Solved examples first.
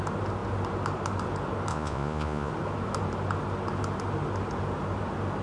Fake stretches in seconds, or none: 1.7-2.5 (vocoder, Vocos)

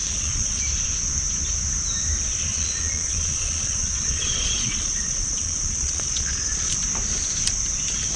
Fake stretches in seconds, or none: 0.0-0.6 (vocoder, Vocos); 2.5-6.7

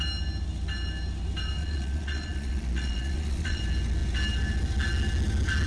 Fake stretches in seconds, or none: 1.6-3.6 (vocoder, Vocos)

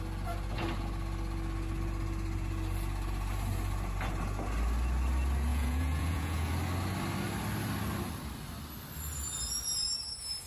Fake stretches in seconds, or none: 5.5-6.5 (vocoder, Vocos)

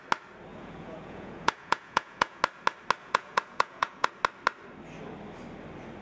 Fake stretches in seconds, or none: 0.5-2.4 (vocoder, Vocos); 3.0-4.1